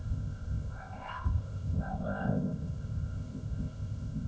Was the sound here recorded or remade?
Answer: remade